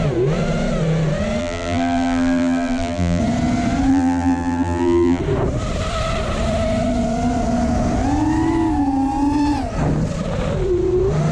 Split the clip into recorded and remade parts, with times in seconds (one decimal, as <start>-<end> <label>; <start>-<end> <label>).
0.0-1.4 recorded; 1.4-3.2 remade; 3.2-3.9 recorded; 3.9-5.2 remade; 5.2-11.3 recorded

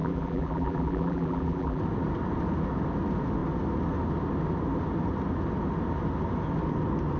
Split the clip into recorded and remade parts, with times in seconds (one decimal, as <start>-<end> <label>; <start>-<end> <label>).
0.0-1.8 remade; 1.8-7.2 recorded

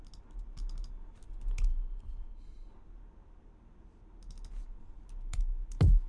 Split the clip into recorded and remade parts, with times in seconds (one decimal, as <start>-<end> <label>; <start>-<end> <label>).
0.0-1.7 recorded; 1.7-2.7 remade; 2.7-6.1 recorded

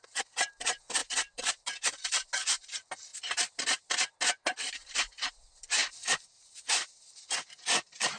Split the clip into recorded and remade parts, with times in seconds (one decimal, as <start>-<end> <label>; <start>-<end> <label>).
0.0-1.0 recorded; 1.0-1.5 remade; 1.5-5.8 recorded; 5.8-7.2 remade; 7.2-8.2 recorded